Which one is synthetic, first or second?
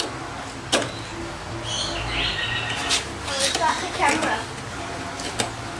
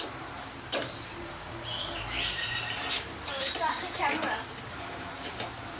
second